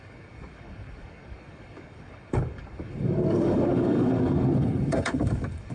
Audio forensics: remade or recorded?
remade